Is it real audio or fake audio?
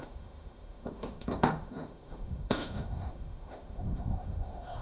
fake